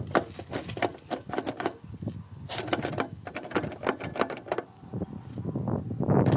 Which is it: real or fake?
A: real